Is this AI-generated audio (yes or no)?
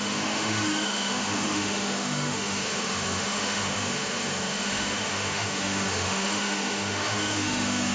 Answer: yes